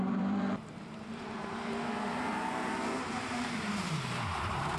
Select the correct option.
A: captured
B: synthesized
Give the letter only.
B